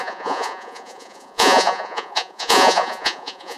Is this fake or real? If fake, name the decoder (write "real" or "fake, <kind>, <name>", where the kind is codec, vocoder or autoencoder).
fake, vocoder, Vocos